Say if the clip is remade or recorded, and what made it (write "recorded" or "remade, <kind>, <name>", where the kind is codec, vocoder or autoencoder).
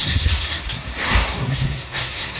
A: remade, codec, SNAC